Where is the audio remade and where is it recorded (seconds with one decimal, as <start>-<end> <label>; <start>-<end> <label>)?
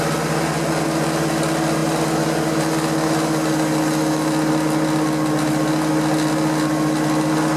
0.0-7.6 recorded